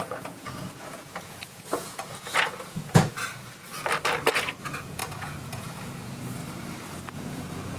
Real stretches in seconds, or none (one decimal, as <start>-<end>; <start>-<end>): 3.1-4.6; 6.4-7.1